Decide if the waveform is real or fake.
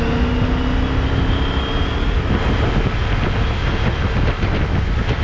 real